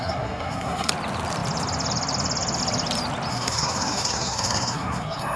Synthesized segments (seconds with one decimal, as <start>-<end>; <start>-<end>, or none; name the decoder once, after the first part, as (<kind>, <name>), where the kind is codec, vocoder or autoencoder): 0.0-0.9 (codec, SNAC); 3.3-5.4